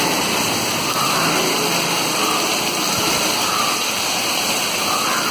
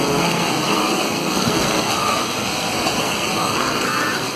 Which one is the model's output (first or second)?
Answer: second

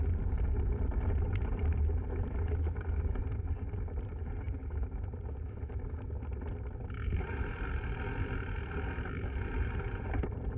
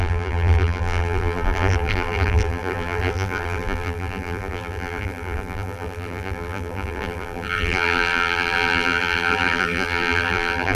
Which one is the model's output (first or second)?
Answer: second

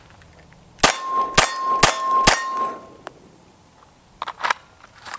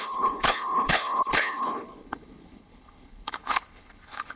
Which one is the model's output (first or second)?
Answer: second